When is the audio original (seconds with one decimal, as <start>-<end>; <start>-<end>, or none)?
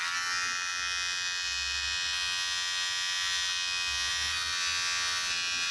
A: 0.0-5.7